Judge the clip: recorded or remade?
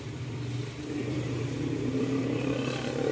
remade